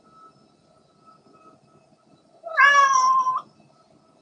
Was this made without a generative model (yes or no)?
yes